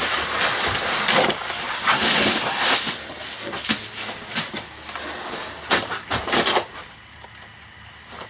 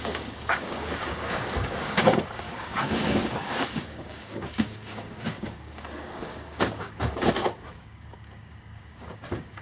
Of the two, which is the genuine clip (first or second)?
first